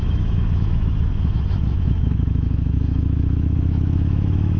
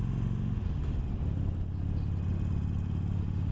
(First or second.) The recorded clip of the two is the second